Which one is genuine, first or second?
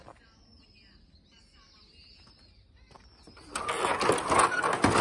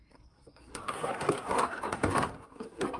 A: first